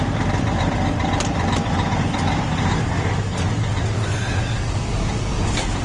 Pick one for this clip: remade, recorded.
remade